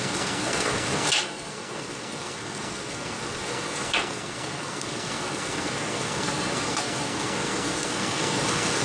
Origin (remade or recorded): remade